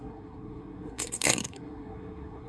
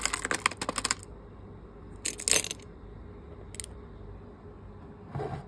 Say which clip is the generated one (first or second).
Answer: first